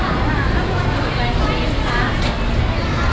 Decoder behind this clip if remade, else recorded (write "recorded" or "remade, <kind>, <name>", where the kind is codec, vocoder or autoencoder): recorded